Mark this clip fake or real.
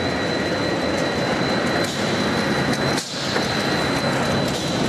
real